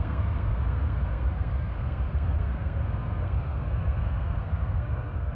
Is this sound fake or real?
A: fake